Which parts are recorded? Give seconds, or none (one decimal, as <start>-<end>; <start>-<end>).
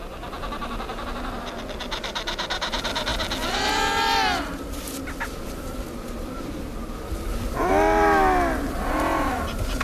0.0-9.8